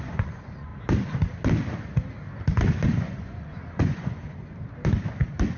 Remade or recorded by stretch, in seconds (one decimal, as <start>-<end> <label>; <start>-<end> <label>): 0.0-0.7 remade; 0.7-3.0 recorded; 3.0-4.2 remade; 4.2-5.6 recorded

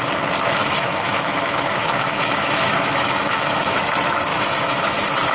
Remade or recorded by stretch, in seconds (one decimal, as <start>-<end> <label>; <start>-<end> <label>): 0.0-0.6 recorded; 0.6-3.8 remade; 3.8-4.3 recorded; 4.3-5.3 remade

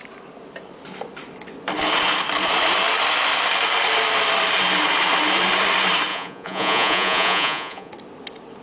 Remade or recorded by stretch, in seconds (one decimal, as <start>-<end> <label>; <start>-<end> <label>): 0.0-6.1 recorded; 6.1-7.9 remade; 7.9-8.6 recorded

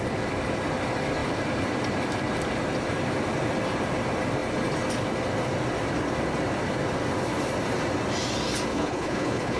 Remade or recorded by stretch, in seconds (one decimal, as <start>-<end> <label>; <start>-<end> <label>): 0.0-8.7 recorded; 8.7-9.6 remade

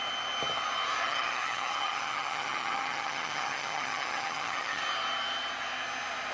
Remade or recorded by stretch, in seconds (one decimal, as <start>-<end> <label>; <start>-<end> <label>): 0.0-1.0 recorded; 1.0-4.8 remade; 4.8-6.3 recorded

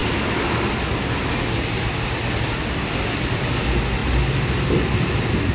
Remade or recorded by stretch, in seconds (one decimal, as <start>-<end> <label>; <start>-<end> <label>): 0.0-5.5 recorded